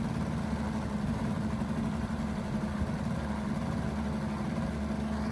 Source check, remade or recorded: recorded